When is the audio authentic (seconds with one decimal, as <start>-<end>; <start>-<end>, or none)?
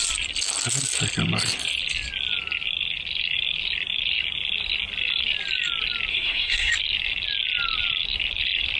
0.0-6.1; 6.7-8.8